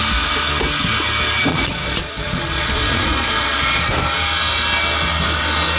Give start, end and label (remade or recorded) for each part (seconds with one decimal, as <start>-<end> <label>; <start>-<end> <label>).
0.0-1.5 recorded; 1.5-3.8 remade; 3.8-5.8 recorded

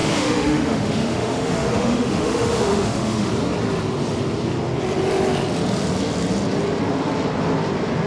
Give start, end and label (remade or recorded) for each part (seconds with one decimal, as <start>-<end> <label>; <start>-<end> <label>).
0.0-3.3 remade; 3.3-8.1 recorded